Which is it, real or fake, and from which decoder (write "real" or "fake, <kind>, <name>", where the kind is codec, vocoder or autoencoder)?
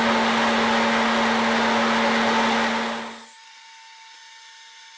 real